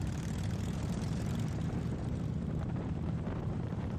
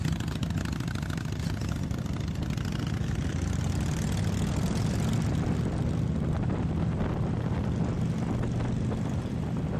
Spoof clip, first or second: first